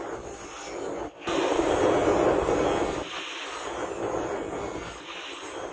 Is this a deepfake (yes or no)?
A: no